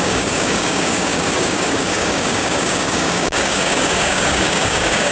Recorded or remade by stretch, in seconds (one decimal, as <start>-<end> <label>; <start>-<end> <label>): 0.0-5.1 remade